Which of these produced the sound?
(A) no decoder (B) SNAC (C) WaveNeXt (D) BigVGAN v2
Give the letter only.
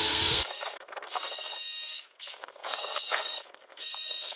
B